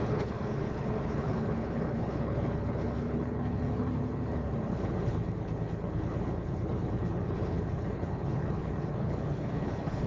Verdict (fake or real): fake